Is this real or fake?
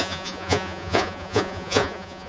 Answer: fake